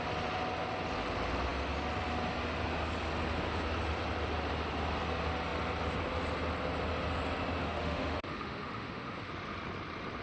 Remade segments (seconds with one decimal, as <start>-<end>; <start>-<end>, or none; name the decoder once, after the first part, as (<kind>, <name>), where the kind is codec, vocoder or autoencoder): 7.6-9.3 (autoencoder, DAC-VAE)